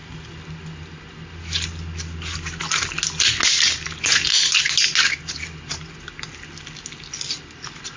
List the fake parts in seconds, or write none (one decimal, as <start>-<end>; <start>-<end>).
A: none